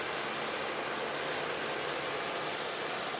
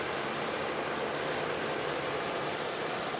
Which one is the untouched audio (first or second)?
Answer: first